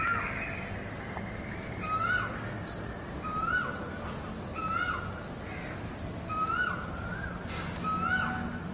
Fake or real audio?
real